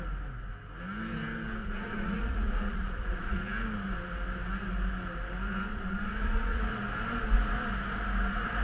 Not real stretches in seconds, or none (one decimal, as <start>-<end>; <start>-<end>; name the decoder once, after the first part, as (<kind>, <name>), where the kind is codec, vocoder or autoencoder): 1.6-3.4 (vocoder, Vocos); 5.7-6.6